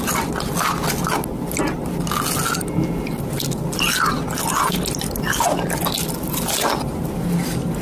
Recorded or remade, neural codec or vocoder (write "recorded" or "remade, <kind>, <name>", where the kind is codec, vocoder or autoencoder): recorded